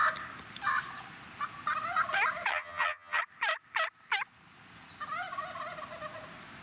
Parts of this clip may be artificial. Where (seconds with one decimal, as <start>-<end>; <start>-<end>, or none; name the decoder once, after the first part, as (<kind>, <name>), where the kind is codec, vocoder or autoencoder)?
2.5-3.2 (vocoder, HiFi-GAN)